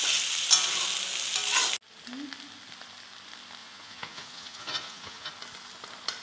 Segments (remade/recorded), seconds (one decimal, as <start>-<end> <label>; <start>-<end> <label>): 0.0-3.6 recorded; 3.6-5.3 remade; 5.3-6.2 recorded

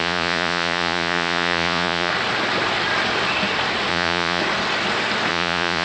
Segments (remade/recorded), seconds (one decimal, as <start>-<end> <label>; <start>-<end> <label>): 0.0-2.1 remade; 2.1-3.9 recorded; 3.9-4.4 remade; 4.4-5.3 recorded; 5.3-5.8 remade

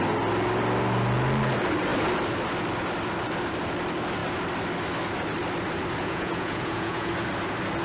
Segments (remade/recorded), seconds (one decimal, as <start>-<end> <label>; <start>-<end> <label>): 0.0-6.0 recorded; 6.0-7.1 remade; 7.1-7.8 recorded